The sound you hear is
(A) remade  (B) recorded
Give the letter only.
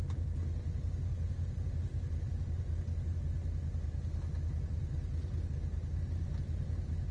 B